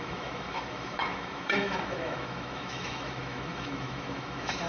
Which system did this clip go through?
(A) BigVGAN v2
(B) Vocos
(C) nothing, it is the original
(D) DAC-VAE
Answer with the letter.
D